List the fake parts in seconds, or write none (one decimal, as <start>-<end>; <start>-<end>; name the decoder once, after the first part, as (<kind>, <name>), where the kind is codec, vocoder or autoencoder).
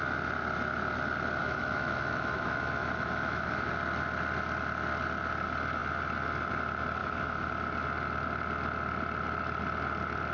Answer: 1.4-3.7 (autoencoder, DAC-VAE); 7.0-7.5